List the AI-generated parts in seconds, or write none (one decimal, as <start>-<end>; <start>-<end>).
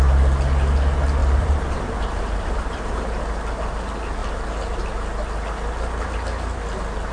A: 1.2-3.2; 4.2-4.8